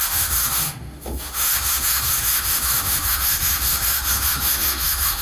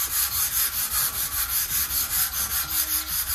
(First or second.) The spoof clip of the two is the first